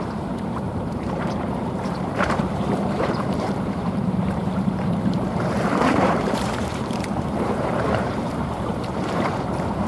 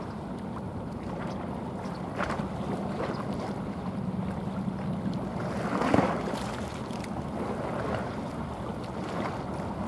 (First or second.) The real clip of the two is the second